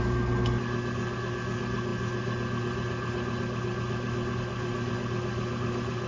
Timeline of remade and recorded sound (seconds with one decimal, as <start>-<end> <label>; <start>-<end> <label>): 0.0-6.1 recorded